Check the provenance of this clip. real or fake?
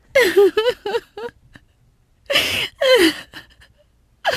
real